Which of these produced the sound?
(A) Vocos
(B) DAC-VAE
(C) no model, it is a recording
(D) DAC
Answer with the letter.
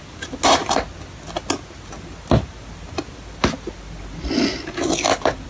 C